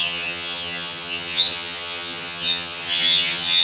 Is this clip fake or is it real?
fake